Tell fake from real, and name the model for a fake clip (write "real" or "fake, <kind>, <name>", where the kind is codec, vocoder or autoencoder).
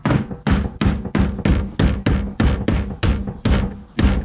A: real